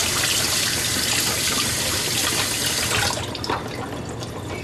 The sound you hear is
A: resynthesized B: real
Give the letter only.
B